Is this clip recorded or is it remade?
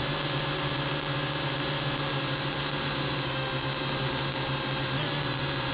recorded